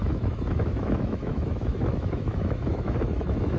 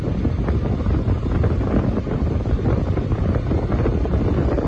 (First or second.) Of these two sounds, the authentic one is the second